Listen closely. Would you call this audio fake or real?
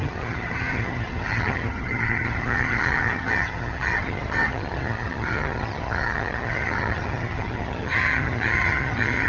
fake